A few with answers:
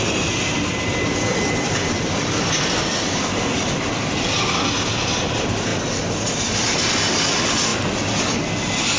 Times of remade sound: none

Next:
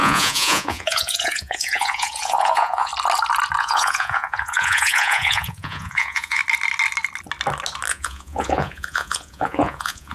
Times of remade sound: 0.0-2.9 (vocoder, Vocos); 3.6-6.4; 7.9-10.1